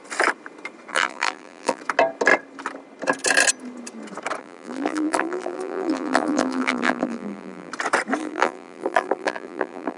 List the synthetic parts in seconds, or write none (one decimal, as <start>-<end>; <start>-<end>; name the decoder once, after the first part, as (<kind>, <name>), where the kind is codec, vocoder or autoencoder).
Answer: 0.9-1.8 (vocoder, BigVGAN v2); 4.4-7.7; 8.2-10.0